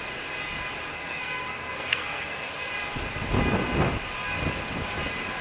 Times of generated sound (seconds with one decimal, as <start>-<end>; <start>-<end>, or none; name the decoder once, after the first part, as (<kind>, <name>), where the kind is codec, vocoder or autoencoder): 0.9-2.7 (codec, SNAC)